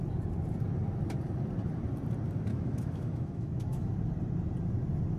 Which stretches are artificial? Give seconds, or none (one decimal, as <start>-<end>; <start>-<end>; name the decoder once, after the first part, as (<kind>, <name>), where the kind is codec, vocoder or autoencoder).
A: 2.5-3.9 (autoencoder, DAC-VAE)